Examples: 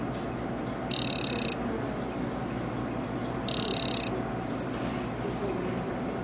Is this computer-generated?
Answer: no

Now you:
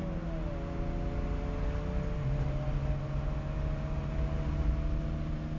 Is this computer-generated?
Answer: no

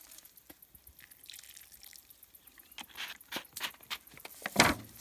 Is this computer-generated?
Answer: no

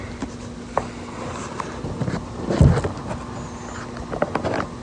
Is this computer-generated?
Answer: no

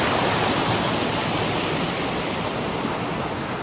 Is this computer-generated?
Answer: no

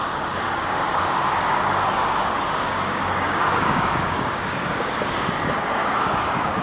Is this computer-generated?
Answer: yes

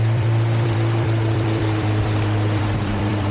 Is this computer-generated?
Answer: yes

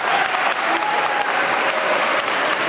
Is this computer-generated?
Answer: no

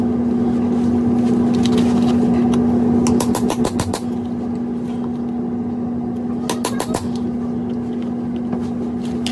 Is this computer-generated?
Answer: no